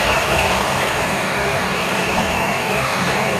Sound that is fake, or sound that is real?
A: fake